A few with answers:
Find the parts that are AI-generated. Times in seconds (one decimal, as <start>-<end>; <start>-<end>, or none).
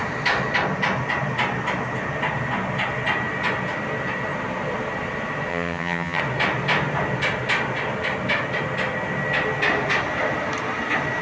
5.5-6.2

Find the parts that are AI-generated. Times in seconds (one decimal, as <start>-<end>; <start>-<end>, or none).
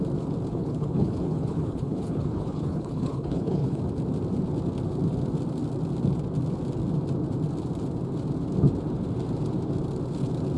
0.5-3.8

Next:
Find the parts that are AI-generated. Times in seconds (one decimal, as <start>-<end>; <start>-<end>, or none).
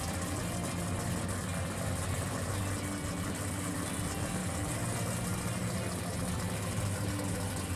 none